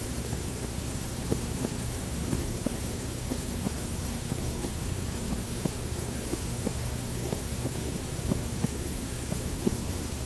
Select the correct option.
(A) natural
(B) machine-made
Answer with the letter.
B